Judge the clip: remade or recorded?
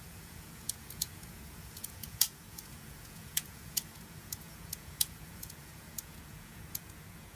remade